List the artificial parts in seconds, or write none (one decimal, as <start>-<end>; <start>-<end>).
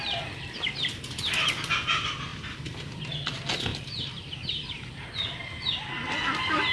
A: 2.3-3.0; 3.7-5.0